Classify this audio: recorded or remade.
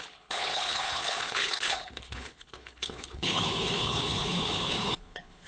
remade